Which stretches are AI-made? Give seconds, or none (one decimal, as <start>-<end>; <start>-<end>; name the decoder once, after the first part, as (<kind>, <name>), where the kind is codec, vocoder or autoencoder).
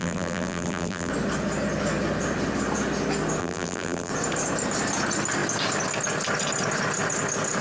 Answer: 0.0-1.1 (vocoder, BigVGAN v2); 3.4-4.1